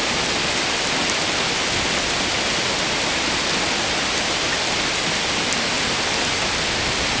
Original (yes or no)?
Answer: yes